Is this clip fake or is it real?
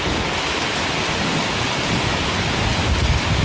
real